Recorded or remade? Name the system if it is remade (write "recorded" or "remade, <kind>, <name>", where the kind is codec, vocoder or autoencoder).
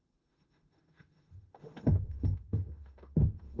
remade, autoencoder, DAC-VAE